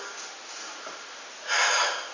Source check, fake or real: real